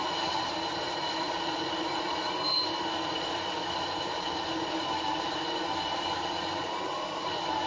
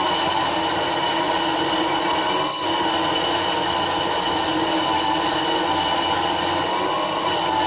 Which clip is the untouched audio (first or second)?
second